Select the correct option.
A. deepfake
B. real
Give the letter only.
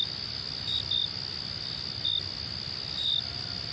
B